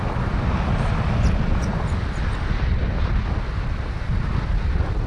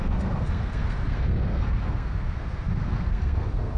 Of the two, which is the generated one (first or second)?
second